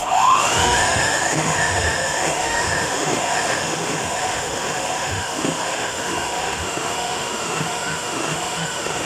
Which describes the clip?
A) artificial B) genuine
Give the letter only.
A